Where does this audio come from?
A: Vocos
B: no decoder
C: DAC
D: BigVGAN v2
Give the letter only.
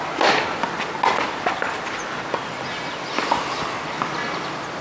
B